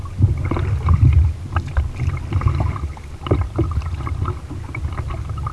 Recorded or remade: recorded